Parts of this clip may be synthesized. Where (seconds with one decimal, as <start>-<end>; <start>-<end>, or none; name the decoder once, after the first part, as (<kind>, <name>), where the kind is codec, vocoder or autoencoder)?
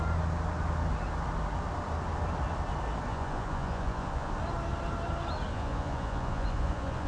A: 3.1-4.3 (vocoder, Vocos); 5.5-7.1